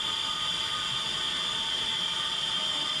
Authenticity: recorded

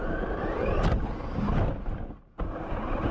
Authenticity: recorded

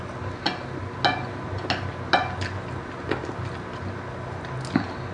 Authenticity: recorded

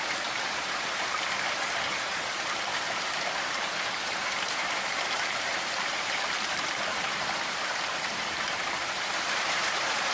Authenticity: remade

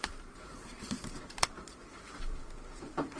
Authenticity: remade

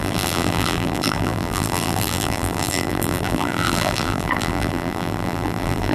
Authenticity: remade